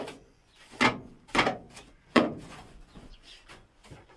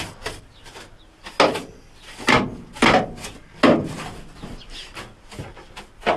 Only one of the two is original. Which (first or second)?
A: second